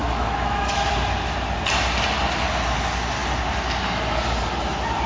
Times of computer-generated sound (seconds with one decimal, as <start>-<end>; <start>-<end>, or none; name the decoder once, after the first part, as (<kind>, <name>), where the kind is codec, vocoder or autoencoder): 0.0-0.9 (autoencoder, DAC-VAE)